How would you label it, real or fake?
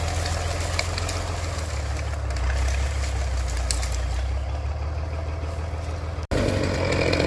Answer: real